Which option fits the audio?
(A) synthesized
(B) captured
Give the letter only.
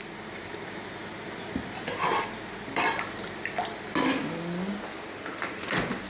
B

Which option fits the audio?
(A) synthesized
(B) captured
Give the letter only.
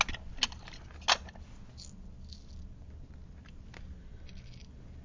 B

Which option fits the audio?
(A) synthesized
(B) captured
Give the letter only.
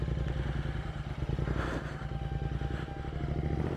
B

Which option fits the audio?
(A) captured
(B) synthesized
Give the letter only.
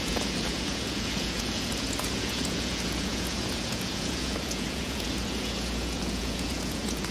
B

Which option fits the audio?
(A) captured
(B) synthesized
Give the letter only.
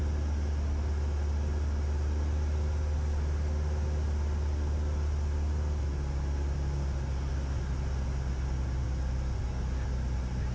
A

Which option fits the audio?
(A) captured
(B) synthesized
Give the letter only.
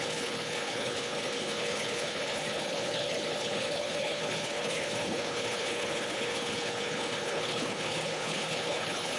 B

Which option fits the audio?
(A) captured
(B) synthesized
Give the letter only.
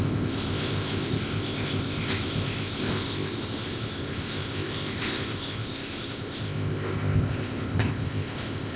B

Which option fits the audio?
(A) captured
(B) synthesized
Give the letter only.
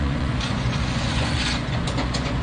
B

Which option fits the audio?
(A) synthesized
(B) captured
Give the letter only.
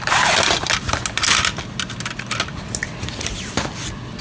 B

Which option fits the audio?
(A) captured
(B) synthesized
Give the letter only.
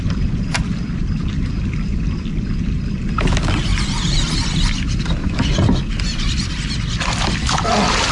A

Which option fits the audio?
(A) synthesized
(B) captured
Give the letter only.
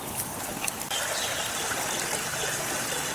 B